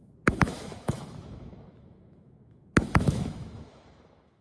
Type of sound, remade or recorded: remade